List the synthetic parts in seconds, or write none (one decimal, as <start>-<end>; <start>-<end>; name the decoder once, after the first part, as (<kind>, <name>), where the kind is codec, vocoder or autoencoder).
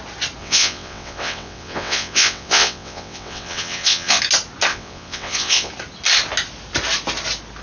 0.4-4.2 (vocoder, WaveNeXt); 4.7-5.7